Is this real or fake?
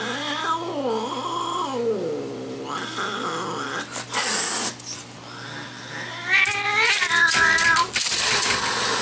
real